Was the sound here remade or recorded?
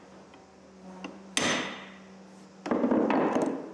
recorded